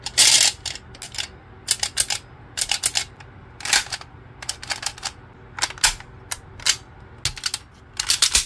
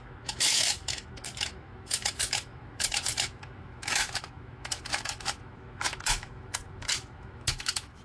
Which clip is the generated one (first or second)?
second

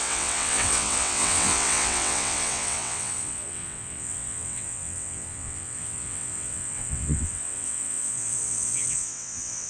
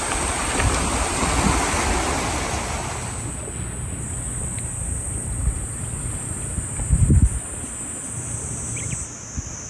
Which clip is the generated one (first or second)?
first